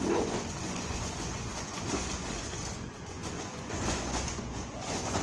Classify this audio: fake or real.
fake